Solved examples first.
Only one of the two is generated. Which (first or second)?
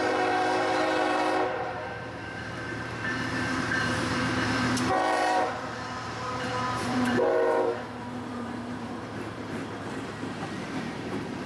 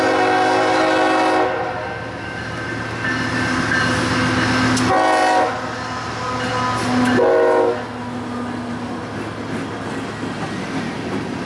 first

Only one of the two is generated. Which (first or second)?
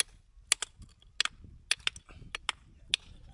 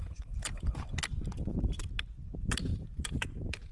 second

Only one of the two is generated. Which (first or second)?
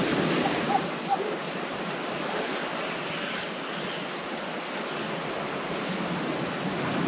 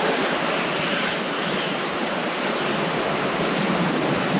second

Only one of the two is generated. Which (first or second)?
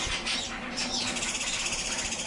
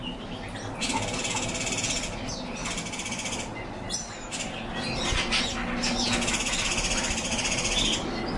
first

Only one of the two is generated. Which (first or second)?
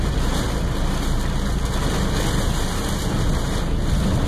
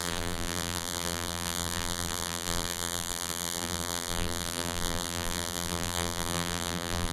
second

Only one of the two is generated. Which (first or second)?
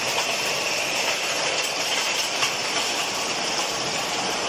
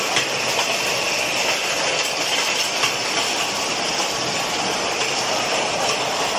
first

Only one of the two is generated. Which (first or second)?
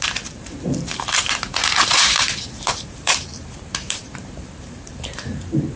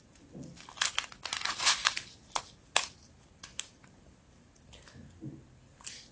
first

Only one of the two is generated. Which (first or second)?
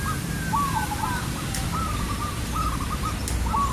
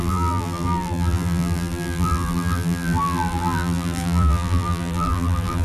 second